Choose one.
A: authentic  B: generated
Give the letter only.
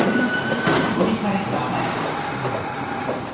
A